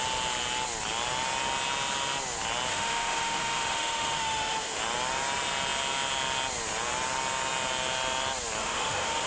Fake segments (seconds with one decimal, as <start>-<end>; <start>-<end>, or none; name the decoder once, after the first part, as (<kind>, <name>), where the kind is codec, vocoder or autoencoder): 2.7-4.8 (autoencoder, DAC-VAE); 8.6-9.3